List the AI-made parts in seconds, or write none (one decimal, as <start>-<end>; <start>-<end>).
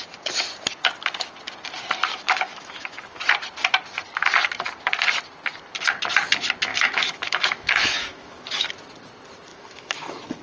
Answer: 2.1-3.2; 6.7-8.7; 9.5-10.4